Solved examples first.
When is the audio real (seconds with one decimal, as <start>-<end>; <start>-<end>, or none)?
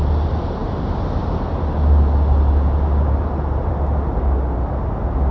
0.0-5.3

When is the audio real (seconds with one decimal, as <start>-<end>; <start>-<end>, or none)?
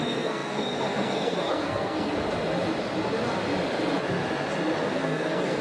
2.1-4.9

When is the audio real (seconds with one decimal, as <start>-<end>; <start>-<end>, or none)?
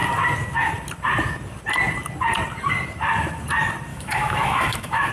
0.0-3.9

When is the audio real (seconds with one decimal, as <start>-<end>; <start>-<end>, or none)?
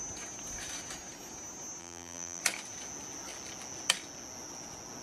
0.0-1.8; 2.4-5.0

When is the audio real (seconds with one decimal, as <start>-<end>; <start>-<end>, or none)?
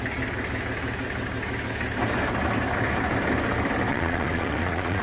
0.0-3.9